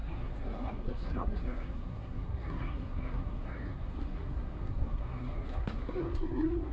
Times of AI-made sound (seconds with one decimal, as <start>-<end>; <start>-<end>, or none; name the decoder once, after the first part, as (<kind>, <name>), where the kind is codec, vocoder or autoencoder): 0.0-6.7 (codec, SNAC)